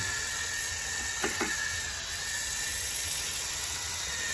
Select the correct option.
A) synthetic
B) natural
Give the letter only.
A